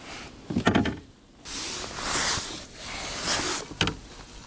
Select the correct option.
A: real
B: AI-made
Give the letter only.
A